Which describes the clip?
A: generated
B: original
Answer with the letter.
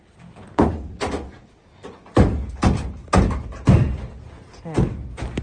B